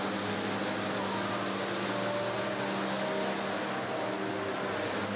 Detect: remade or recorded recorded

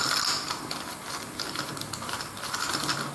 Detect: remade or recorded recorded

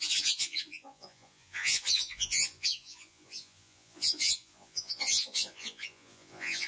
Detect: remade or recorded remade